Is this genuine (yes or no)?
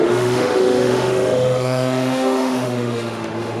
no